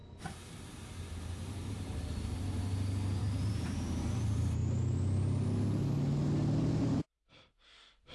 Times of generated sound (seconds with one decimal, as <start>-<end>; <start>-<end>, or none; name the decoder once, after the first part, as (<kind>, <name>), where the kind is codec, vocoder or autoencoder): 0.5-2.6 (vocoder, BigVGAN v2); 3.2-4.6; 6.6-8.1